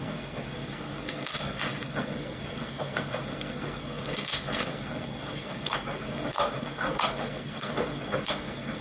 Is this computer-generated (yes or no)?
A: yes